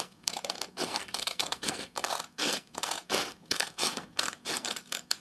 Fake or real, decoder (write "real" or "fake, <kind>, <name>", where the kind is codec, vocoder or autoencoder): fake, codec, SNAC